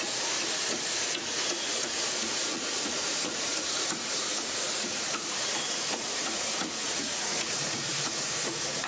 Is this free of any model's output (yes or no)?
no